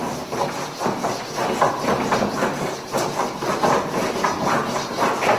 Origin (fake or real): real